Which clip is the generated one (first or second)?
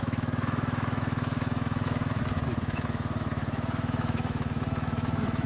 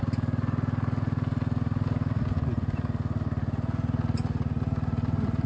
first